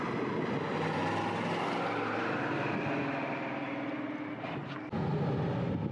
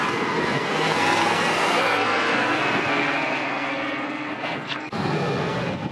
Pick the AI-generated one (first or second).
second